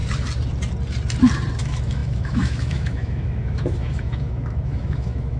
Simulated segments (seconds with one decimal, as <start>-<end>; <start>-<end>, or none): 1.6-5.4